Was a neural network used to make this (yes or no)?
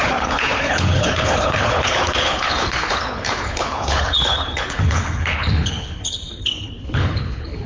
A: yes